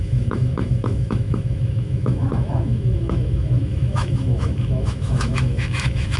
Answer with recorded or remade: remade